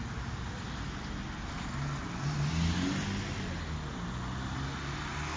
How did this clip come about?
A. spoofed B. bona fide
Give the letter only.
B